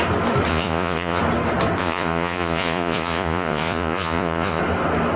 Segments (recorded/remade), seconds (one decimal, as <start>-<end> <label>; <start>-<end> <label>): 0.0-0.5 recorded; 0.5-1.2 remade; 1.2-1.8 recorded; 1.8-4.6 remade; 4.6-5.2 recorded